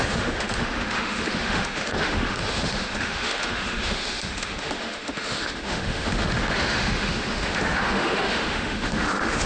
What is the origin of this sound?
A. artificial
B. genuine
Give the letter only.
A